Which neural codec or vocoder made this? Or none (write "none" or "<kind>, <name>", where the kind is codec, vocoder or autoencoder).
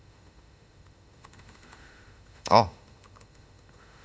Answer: autoencoder, DAC-VAE